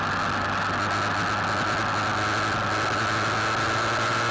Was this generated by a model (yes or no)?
no